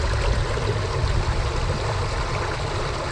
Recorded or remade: recorded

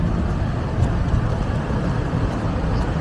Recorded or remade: recorded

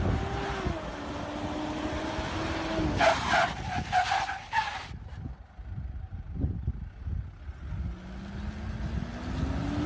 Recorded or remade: recorded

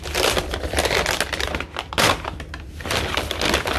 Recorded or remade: recorded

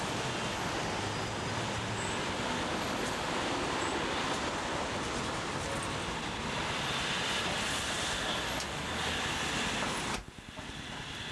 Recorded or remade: recorded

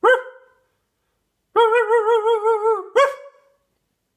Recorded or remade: recorded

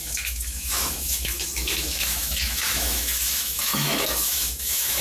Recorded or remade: remade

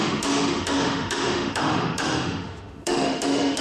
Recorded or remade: remade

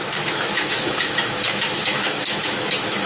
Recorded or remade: remade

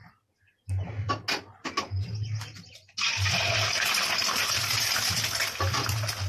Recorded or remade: recorded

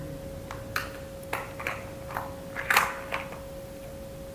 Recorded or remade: recorded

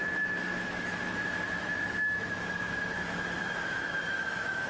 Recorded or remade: remade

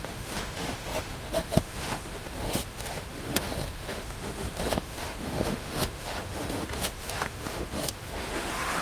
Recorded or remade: remade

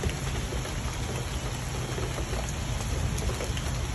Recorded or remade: recorded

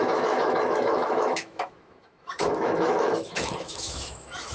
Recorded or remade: remade